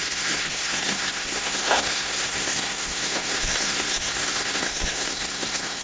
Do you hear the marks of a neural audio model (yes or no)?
yes